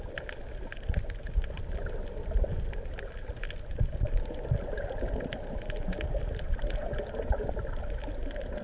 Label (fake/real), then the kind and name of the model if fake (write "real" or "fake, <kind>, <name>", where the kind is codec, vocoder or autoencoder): real